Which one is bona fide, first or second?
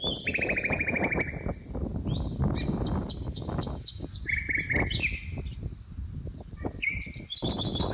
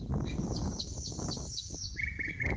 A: first